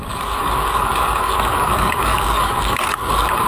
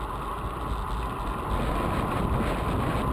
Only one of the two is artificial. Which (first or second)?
first